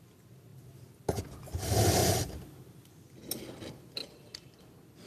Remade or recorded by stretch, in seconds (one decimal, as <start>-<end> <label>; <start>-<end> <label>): 0.0-2.0 recorded; 2.0-3.0 remade; 3.0-5.1 recorded